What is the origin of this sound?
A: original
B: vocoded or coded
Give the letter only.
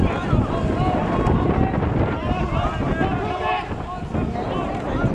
A